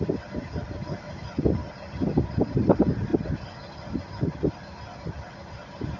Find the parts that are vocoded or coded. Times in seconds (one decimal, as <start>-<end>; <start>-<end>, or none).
none